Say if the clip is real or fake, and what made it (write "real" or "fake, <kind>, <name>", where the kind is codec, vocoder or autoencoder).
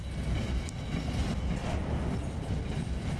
real